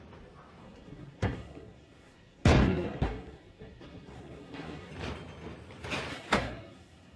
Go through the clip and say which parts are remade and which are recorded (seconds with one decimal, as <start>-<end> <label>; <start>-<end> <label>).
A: 0.0-0.6 recorded; 0.6-4.9 remade; 4.9-6.1 recorded; 6.1-7.2 remade